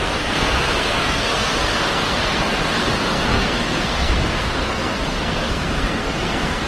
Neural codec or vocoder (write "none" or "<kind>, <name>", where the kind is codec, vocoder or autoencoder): codec, SNAC